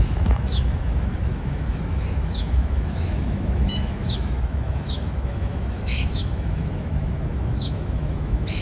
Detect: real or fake fake